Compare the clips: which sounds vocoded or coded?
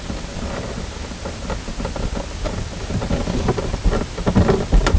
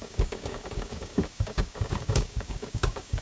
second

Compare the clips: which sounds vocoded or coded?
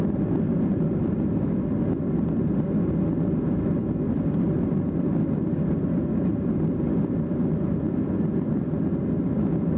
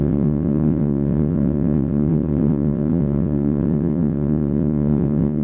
second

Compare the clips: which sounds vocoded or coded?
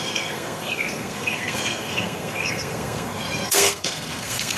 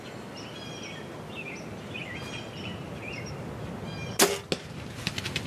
first